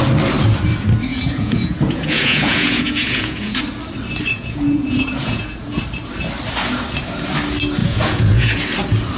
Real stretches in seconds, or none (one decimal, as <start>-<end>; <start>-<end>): 0.0-1.1; 3.6-4.3; 5.8-7.8; 8.6-9.2